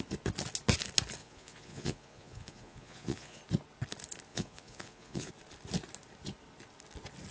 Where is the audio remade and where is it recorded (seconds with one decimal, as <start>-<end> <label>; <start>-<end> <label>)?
0.0-1.2 recorded; 1.2-3.4 remade; 3.4-4.3 recorded; 4.3-5.3 remade; 5.3-7.3 recorded